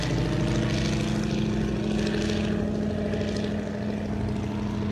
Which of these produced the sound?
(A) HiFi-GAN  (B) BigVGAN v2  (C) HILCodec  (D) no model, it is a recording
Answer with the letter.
D